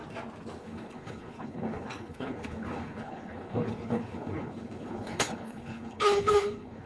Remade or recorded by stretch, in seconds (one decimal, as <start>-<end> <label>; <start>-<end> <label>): 0.0-0.6 recorded; 0.6-6.9 remade